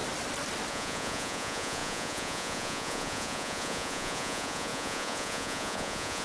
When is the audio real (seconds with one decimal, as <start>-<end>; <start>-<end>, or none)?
0.0-0.7